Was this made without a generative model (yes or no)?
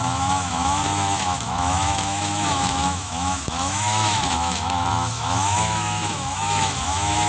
no